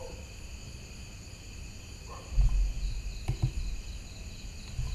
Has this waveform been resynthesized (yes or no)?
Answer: no